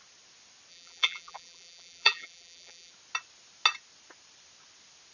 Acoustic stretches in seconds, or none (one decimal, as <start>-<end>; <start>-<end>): 0.0-0.7; 2.9-5.1

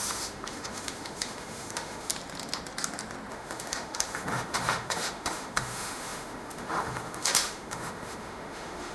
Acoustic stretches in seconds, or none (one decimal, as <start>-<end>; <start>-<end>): 2.1-3.3

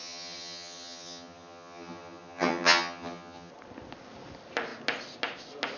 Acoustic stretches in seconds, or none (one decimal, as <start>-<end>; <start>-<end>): 3.5-5.8